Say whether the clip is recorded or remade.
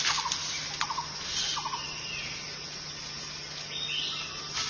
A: recorded